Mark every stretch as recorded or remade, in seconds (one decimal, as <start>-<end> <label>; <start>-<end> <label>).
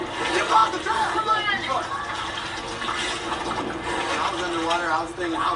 0.0-0.6 recorded; 0.6-2.3 remade; 2.3-5.6 recorded